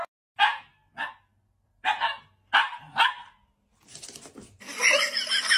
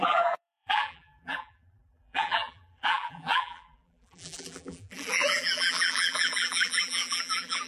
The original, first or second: first